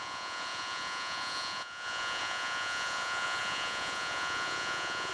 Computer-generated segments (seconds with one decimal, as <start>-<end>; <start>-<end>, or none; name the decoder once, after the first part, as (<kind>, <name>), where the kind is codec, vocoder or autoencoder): 0.0-5.1 (vocoder, Vocos)